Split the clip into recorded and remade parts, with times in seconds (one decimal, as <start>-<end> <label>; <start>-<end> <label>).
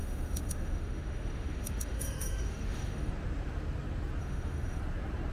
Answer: 0.0-3.1 remade; 3.1-4.2 recorded; 4.2-4.8 remade; 4.8-5.3 recorded